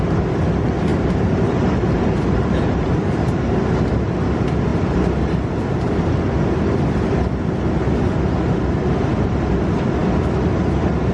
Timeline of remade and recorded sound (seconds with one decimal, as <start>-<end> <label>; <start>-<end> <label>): 0.0-0.9 recorded; 0.9-3.8 remade; 3.8-11.1 recorded